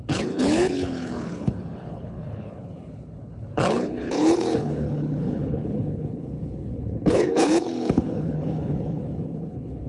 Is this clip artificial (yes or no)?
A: yes